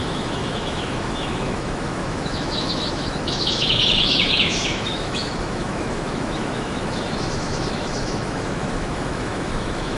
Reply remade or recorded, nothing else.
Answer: remade